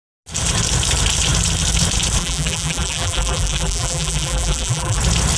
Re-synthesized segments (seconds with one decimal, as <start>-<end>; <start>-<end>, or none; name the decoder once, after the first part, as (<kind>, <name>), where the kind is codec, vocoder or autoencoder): 2.2-5.0 (vocoder, BigVGAN v2)

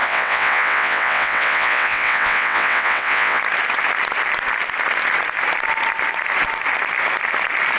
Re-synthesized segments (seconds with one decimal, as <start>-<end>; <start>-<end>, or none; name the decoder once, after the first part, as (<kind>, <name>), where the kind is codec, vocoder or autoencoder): 0.0-3.4 (vocoder, WaveNeXt)

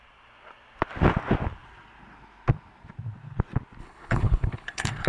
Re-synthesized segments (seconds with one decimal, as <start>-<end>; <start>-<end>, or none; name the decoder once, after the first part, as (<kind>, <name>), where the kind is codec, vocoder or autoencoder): 3.8-5.1 (codec, HILCodec)

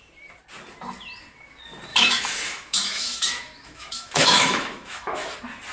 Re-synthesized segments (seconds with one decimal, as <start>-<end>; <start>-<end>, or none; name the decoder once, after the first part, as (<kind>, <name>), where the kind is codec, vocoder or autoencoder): 1.9-5.3 (autoencoder, DAC-VAE)